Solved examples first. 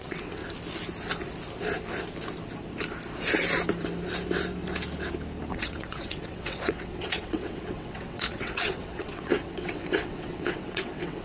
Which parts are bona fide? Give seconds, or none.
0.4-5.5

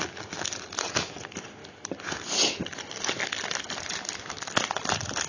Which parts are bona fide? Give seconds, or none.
0.0-5.3

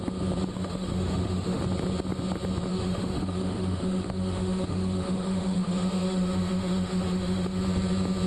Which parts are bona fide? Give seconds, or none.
0.0-0.5; 1.6-2.7; 7.6-8.3